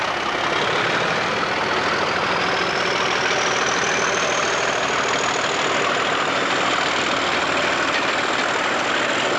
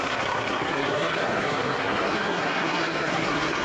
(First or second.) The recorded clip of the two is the first